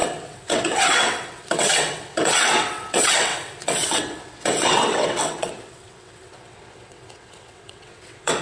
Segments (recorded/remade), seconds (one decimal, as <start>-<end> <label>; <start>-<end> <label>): 0.0-8.4 remade

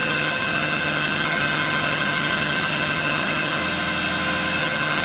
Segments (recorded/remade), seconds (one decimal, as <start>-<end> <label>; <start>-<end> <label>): 0.0-3.6 remade; 3.6-4.6 recorded; 4.6-5.0 remade

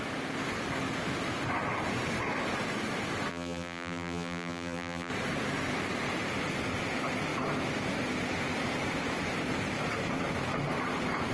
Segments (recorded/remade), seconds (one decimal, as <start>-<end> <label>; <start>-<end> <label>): 0.0-3.3 recorded; 3.3-5.1 remade; 5.1-11.3 recorded

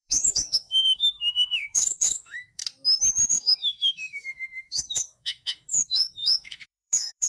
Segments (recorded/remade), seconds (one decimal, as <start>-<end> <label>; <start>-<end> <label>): 0.0-2.6 remade; 2.6-3.3 recorded; 3.3-7.3 remade

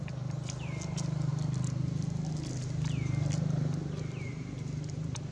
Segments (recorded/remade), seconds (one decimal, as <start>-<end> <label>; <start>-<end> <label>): 0.0-5.3 recorded

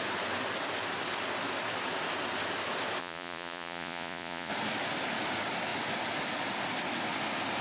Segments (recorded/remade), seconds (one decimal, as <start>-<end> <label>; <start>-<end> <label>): 0.0-3.0 recorded; 3.0-4.5 remade; 4.5-7.6 recorded

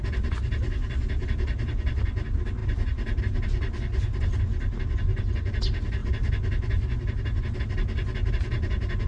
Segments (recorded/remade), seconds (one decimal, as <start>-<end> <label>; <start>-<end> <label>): 0.0-9.1 recorded